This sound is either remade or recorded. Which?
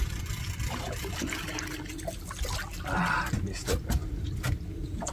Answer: recorded